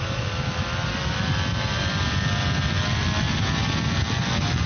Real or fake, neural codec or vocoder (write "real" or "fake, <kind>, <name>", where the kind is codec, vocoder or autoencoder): real